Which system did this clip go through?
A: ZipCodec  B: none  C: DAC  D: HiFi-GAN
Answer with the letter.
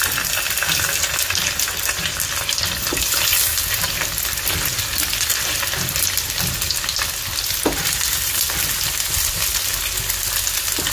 B